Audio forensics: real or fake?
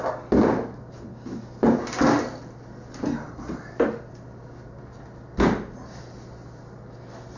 real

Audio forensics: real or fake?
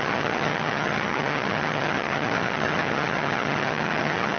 fake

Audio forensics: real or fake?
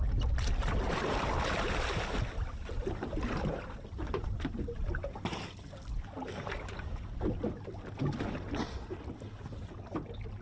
real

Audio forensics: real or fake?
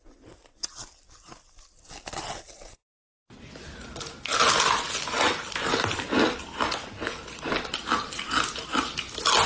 real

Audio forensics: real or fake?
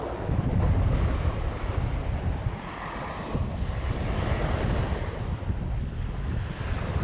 real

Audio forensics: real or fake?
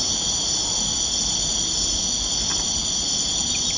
real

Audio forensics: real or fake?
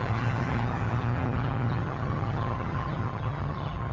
fake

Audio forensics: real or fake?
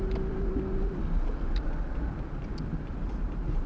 real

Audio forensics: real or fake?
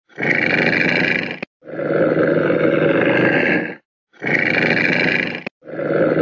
real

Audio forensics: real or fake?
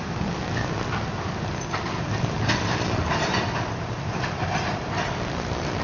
real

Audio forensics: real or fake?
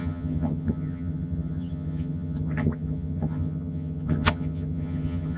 fake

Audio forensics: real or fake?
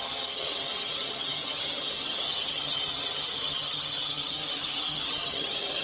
fake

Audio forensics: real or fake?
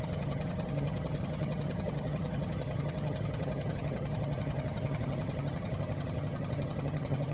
fake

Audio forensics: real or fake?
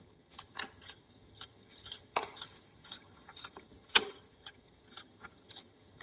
fake